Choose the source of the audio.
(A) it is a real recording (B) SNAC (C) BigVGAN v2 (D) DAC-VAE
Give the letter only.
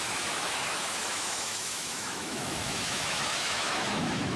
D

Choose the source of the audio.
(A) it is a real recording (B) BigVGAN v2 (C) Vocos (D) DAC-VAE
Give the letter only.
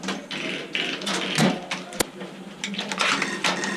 A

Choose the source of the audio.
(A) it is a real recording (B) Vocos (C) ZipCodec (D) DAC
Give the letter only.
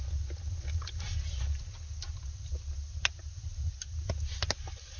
A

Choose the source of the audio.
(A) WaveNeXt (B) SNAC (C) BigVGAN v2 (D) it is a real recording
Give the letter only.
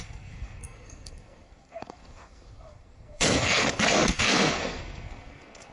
B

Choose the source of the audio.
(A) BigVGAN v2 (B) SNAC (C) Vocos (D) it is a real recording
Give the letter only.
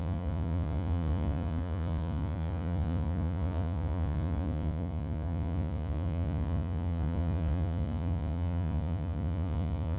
C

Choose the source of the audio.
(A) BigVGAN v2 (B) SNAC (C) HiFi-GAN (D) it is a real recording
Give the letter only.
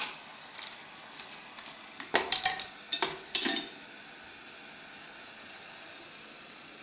D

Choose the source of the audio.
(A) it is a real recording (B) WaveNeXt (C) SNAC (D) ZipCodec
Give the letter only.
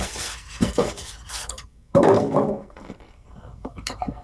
C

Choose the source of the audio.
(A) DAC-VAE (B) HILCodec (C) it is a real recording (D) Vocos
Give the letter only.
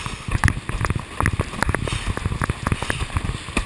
C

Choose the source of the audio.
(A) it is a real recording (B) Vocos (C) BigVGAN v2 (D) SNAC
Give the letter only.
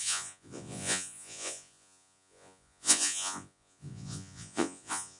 B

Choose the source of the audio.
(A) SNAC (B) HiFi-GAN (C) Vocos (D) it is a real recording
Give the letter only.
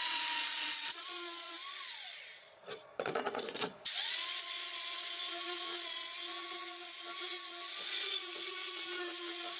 C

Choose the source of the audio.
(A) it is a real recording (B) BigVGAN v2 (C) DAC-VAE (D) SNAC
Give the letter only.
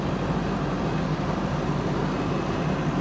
A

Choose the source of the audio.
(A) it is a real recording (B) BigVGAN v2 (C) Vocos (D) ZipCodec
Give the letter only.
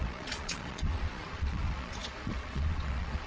C